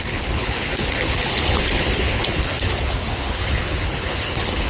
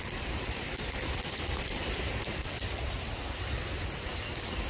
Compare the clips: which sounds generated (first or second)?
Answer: first